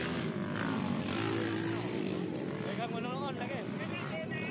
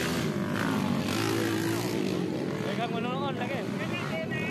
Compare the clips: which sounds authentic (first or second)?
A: second